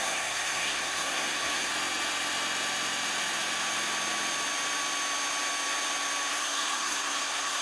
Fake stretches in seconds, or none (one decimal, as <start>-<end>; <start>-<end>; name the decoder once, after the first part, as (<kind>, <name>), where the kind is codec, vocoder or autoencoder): 0.0-1.7 (codec, SNAC); 6.3-7.6